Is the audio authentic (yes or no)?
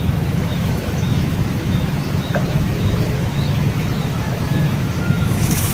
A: no